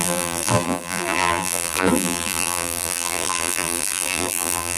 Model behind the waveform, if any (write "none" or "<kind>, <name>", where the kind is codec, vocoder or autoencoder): vocoder, BigVGAN v2